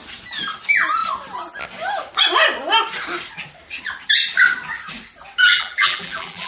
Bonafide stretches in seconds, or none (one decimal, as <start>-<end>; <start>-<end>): 0.0-5.4